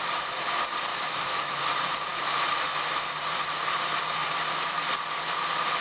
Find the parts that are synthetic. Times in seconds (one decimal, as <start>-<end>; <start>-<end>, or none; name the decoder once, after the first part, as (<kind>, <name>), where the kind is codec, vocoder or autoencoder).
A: 0.9-1.6 (autoencoder, DAC-VAE)